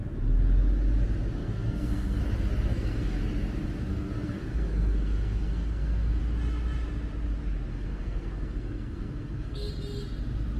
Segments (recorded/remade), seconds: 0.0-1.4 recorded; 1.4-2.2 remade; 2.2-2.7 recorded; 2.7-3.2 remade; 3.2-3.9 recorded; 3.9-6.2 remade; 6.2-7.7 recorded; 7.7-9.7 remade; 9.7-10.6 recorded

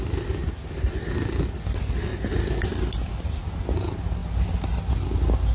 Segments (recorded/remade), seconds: 0.0-5.5 recorded

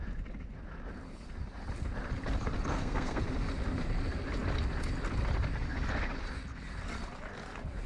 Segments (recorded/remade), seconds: 0.0-2.7 recorded; 2.7-3.2 remade; 3.2-7.9 recorded

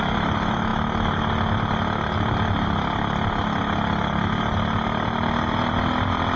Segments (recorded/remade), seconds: 0.0-6.4 recorded

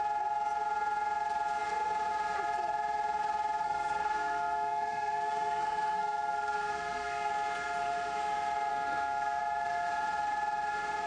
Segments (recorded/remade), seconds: 0.0-3.6 recorded; 3.6-7.3 remade; 7.3-8.7 recorded; 8.7-9.4 remade; 9.4-11.1 recorded

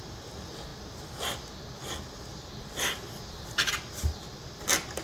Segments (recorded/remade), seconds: 0.0-5.0 recorded